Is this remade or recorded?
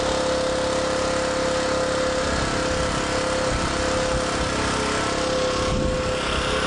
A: recorded